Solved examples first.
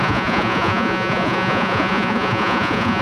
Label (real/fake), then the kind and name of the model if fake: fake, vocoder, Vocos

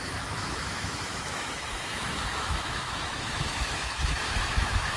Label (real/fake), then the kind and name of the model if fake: fake, autoencoder, DAC-VAE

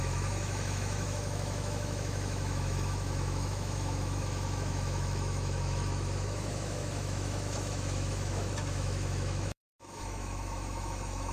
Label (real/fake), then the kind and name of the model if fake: fake, autoencoder, DAC-VAE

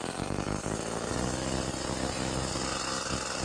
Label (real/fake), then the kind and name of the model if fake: real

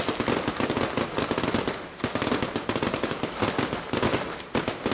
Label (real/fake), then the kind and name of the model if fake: real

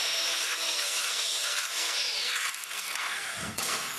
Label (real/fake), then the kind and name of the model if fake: fake, codec, SNAC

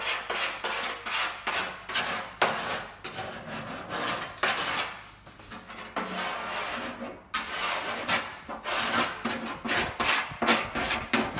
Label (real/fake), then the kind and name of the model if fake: real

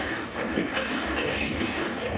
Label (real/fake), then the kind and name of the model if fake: fake, codec, DAC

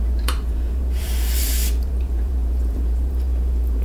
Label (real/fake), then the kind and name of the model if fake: fake, vocoder, BigVGAN v2